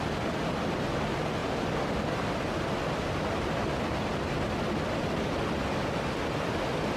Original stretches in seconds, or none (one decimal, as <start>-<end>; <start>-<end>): 0.0-7.0